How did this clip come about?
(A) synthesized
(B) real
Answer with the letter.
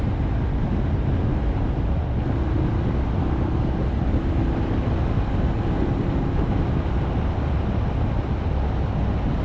B